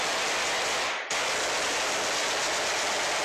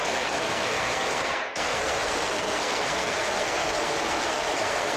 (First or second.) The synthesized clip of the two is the second